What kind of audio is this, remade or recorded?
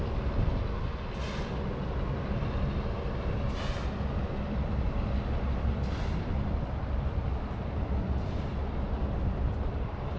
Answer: recorded